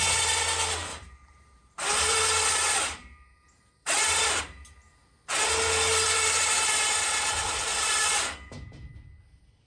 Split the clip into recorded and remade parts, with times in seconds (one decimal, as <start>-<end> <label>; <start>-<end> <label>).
0.0-0.9 recorded; 0.9-4.4 remade; 4.4-5.9 recorded; 5.9-8.1 remade; 8.1-9.7 recorded